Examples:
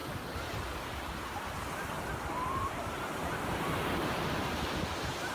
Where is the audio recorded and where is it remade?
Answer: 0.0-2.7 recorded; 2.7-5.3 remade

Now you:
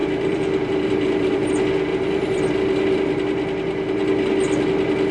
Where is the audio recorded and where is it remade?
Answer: 0.0-1.5 remade; 1.5-1.9 recorded; 1.9-2.5 remade; 2.5-5.1 recorded

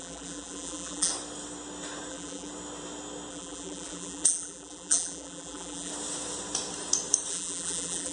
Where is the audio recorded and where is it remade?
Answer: 0.0-1.1 remade; 1.1-2.1 recorded; 2.1-2.5 remade; 2.5-3.3 recorded; 3.3-5.9 remade; 5.9-7.3 recorded; 7.3-8.1 remade

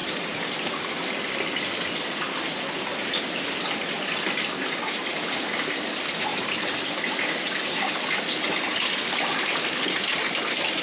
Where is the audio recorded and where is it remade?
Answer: 0.0-0.8 remade; 0.8-6.3 recorded; 6.3-8.2 remade; 8.2-10.8 recorded